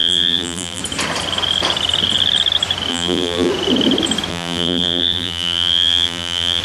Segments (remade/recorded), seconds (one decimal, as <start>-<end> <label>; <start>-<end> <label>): 0.0-0.8 remade; 0.8-2.9 recorded; 2.9-3.5 remade; 3.5-4.3 recorded; 4.3-6.6 remade